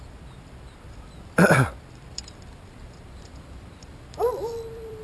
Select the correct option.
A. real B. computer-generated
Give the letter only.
B